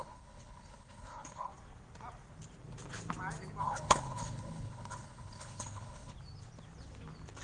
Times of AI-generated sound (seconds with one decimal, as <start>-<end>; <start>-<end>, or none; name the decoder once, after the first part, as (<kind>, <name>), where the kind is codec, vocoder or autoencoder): 0.0-1.5 (codec, HILCodec); 3.6-6.1